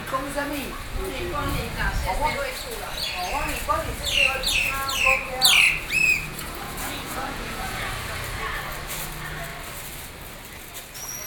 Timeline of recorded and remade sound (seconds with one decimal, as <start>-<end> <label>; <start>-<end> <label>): 0.0-0.5 remade; 0.5-6.3 recorded; 6.3-7.9 remade; 7.9-11.3 recorded